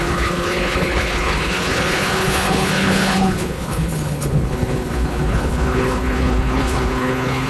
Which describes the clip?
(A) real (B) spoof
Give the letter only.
B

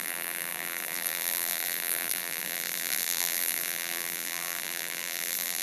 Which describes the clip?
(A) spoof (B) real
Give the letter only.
A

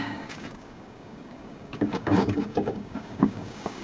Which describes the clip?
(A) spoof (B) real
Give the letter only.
A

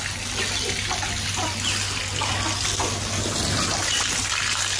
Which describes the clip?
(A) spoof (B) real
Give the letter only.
B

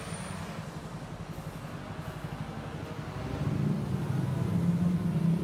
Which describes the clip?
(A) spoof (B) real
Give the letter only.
B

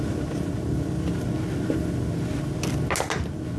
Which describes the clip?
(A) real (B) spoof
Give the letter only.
A